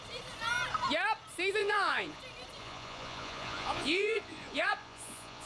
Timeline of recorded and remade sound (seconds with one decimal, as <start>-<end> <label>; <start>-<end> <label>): 0.0-1.6 recorded; 1.6-2.2 remade; 2.2-2.6 recorded; 2.6-5.5 remade